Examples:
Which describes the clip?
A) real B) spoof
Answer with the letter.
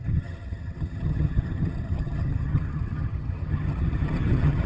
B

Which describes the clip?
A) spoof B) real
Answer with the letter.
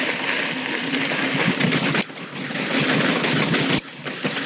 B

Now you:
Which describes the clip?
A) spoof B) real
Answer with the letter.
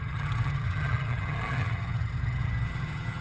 A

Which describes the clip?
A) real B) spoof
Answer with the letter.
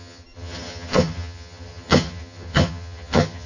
B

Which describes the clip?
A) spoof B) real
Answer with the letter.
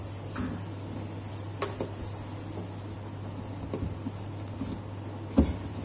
B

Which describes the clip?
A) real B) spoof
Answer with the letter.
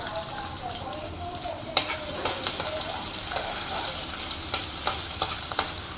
A